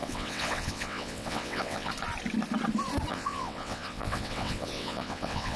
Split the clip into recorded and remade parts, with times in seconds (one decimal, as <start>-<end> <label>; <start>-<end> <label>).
0.0-1.9 remade; 1.9-3.1 recorded; 3.1-5.6 remade